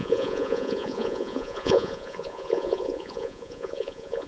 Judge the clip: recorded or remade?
remade